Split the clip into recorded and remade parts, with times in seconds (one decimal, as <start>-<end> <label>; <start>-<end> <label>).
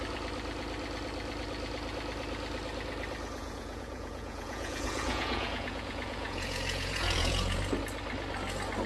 0.0-3.4 recorded; 3.4-7.6 remade; 7.6-8.9 recorded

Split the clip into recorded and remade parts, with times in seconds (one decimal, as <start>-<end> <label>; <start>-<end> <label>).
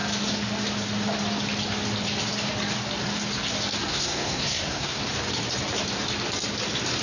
0.0-3.9 recorded; 3.9-5.0 remade; 5.0-7.0 recorded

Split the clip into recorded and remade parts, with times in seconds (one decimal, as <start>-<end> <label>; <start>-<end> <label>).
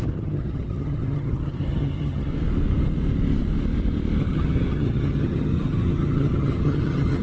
0.0-2.3 remade; 2.3-4.2 recorded; 4.2-7.2 remade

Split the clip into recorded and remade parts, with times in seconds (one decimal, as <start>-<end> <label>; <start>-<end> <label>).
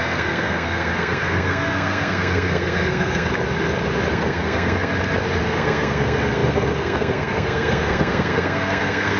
0.0-3.3 remade; 3.3-4.1 recorded; 4.1-4.9 remade; 4.9-5.4 recorded; 5.4-9.2 remade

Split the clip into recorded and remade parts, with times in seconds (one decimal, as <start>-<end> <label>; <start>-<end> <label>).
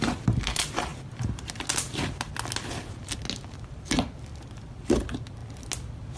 0.0-6.2 recorded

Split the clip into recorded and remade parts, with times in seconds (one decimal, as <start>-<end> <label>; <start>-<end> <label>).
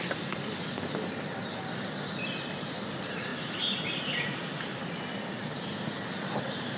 0.0-3.3 recorded; 3.3-5.7 remade; 5.7-6.8 recorded